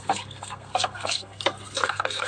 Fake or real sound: fake